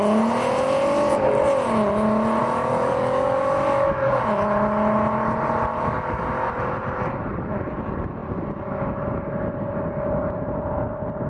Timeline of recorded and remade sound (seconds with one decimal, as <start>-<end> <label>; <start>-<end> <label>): 0.0-2.4 recorded; 2.4-4.2 remade; 4.2-5.7 recorded; 5.7-6.5 remade; 6.5-11.3 recorded